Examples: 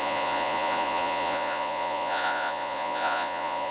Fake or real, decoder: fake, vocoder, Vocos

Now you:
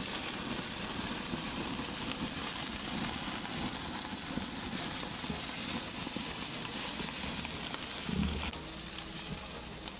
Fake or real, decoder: real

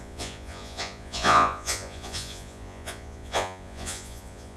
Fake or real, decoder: fake, vocoder, Vocos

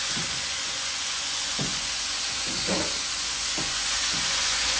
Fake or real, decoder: fake, vocoder, Vocos